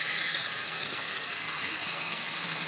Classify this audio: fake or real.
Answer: fake